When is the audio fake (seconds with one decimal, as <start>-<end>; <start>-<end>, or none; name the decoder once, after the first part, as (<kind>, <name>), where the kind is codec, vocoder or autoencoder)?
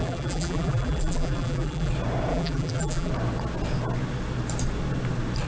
0.0-1.9 (vocoder, BigVGAN v2); 2.3-3.1